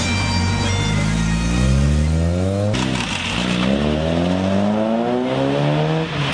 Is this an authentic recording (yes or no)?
yes